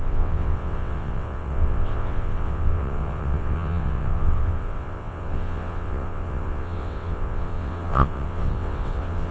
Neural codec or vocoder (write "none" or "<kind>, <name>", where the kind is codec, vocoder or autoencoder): vocoder, WaveNeXt